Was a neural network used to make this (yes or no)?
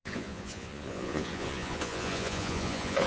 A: yes